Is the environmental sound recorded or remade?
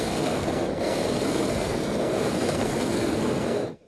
remade